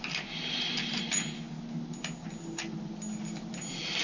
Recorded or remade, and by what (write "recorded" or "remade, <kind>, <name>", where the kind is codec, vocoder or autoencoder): recorded